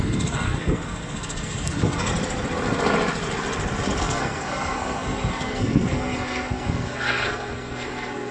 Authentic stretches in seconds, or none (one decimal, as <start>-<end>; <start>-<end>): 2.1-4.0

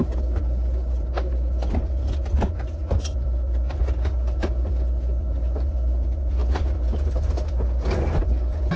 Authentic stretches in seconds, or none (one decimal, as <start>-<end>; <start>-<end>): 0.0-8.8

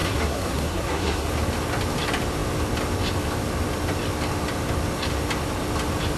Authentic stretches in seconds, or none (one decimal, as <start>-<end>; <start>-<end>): 1.3-6.2

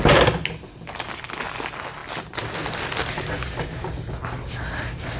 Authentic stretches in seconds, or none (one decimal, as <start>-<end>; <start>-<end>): 0.0-5.2

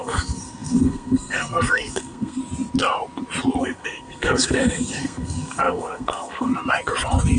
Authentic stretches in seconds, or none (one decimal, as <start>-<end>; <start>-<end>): 2.4-3.6; 6.5-7.4